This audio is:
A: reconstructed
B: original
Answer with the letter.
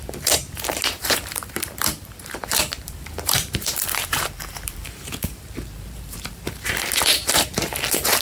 A